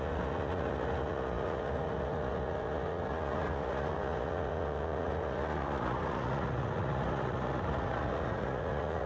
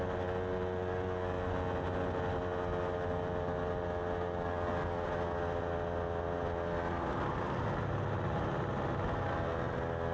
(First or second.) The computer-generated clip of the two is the first